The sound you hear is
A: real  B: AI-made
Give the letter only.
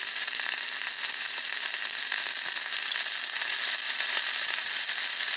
A